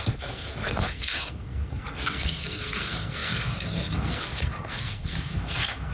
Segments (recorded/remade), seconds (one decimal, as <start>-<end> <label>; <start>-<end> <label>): 0.0-5.9 remade